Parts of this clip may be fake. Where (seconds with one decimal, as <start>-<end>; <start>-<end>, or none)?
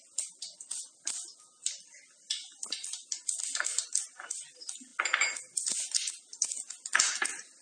none